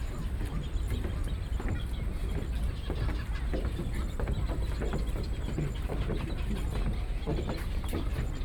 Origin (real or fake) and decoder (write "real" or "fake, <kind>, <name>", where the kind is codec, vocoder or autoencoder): fake, vocoder, BigVGAN v2